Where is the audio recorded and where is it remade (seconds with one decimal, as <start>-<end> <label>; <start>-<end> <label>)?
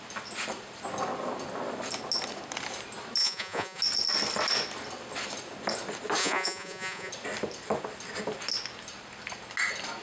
0.0-3.2 recorded; 3.2-3.8 remade; 3.8-6.2 recorded; 6.2-7.1 remade; 7.1-10.0 recorded